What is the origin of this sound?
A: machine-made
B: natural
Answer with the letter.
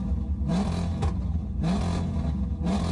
B